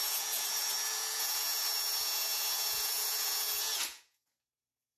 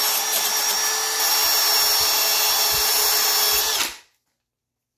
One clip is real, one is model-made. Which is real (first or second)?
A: second